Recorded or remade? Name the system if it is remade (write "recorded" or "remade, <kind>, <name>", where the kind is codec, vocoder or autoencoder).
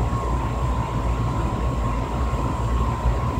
remade, vocoder, BigVGAN v2